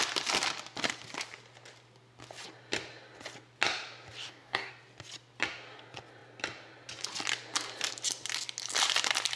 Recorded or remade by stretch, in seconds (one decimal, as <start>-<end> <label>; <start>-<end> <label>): 0.0-4.2 recorded; 4.2-4.7 remade; 4.7-9.4 recorded